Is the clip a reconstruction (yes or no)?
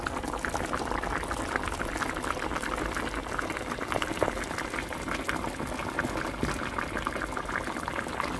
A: no